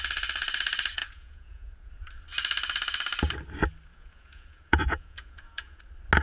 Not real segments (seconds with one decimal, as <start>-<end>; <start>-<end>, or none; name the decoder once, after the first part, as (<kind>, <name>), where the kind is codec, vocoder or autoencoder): 1.0-1.9 (vocoder, Vocos); 3.9-5.8